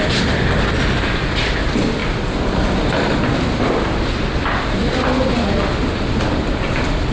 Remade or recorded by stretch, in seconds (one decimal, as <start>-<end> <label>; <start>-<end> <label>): 0.0-7.1 recorded